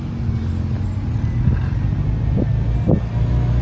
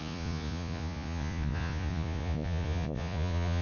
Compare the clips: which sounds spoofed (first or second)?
second